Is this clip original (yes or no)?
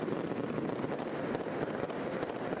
yes